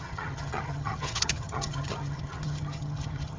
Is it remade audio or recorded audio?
remade